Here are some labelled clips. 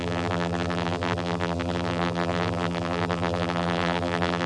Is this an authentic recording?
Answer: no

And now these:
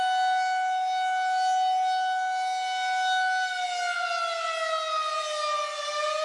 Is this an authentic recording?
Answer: yes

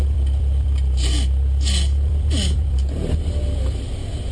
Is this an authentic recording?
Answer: no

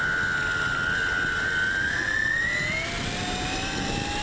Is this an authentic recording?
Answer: yes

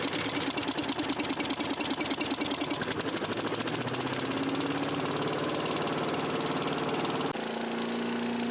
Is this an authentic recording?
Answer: yes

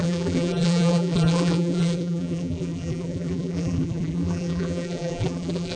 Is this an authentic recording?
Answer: no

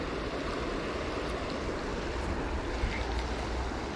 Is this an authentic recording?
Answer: yes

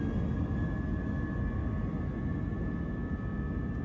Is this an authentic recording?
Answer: yes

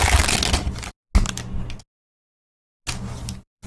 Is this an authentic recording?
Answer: yes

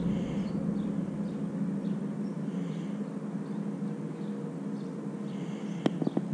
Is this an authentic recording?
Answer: yes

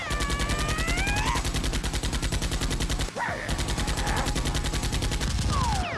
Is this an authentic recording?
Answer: yes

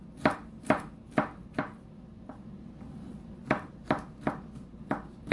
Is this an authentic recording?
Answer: yes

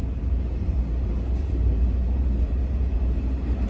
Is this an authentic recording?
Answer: no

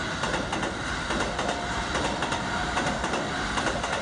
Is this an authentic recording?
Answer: yes